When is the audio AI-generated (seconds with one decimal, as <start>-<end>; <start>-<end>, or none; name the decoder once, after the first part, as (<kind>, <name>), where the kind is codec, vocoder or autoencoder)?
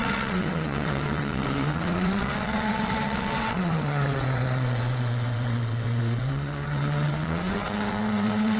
0.0-8.6 (vocoder, WaveNeXt)